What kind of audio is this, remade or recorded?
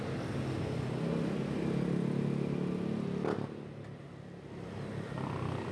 recorded